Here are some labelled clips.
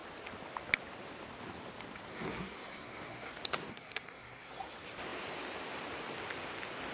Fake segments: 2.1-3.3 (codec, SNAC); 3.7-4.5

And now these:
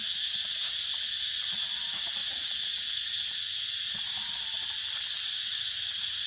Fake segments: none

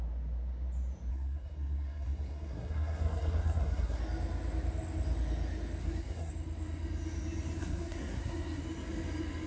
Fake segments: 1.1-4.0 (codec, SNAC); 5.8-6.3; 7.6-8.6

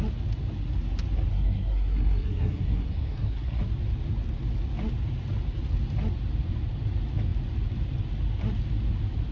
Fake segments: 1.3-3.6 (codec, SNAC)

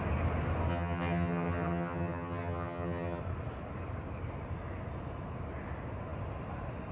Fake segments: 0.7-3.2 (vocoder, HiFi-GAN)

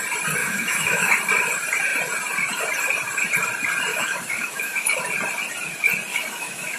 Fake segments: 0.4-1.1 (autoencoder, DAC-VAE); 3.9-5.0; 6.1-6.8